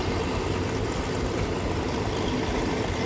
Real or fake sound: real